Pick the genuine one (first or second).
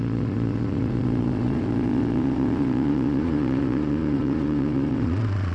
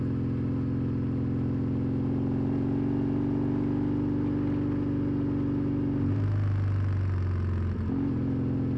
second